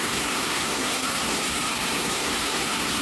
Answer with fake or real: fake